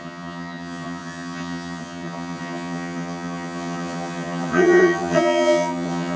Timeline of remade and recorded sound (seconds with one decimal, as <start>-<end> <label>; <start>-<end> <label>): 0.0-6.2 remade